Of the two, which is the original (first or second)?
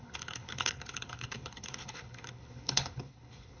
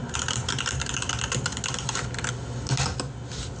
second